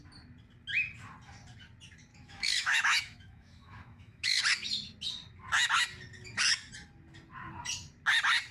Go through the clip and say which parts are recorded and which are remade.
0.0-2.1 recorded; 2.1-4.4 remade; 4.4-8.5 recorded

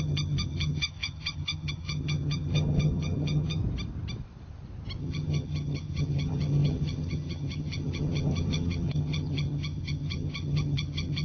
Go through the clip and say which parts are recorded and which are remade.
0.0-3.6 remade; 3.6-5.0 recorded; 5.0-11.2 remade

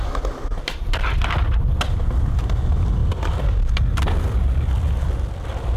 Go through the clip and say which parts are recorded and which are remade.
0.0-5.8 recorded